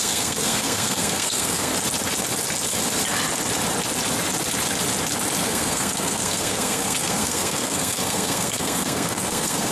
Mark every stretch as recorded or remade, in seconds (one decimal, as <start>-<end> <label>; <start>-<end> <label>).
0.0-1.7 remade; 1.7-5.4 recorded; 5.4-9.7 remade